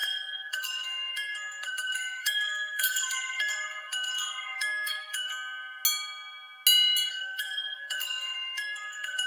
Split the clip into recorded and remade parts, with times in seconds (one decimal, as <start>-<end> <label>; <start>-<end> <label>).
0.0-5.3 remade; 5.3-7.1 recorded; 7.1-9.3 remade